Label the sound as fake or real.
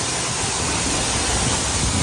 real